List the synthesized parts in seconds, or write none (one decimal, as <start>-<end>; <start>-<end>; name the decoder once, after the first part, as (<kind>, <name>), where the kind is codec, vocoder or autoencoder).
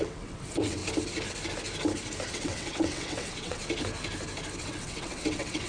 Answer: 0.0-0.8 (vocoder, WaveNeXt); 2.3-3.6; 4.6-5.7